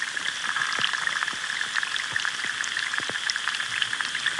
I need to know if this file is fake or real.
real